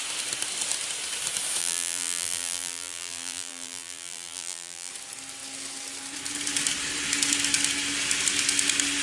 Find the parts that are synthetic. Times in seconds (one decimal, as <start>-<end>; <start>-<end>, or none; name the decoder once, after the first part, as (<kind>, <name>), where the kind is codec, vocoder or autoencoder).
1.6-4.9 (vocoder, BigVGAN v2)